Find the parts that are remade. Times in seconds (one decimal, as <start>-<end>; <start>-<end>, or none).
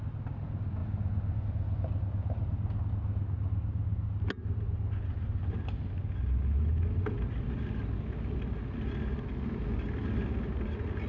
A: none